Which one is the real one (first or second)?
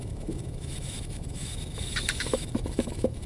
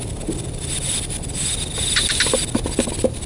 second